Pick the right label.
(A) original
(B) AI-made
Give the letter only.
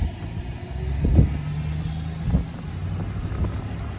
A